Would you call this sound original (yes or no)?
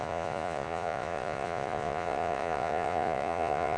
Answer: no